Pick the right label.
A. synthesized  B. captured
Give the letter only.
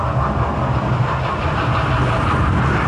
B